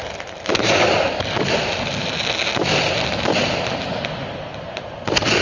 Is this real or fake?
real